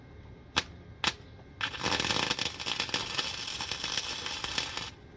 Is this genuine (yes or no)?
yes